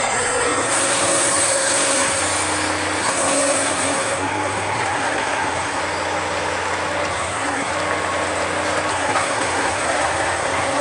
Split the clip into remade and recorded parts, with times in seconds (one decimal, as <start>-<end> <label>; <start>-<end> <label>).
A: 0.0-2.2 remade; 2.2-3.0 recorded; 3.0-5.8 remade; 5.8-7.1 recorded; 7.1-7.7 remade; 7.7-8.9 recorded; 8.9-10.8 remade